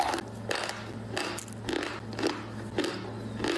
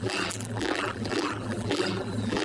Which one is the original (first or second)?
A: first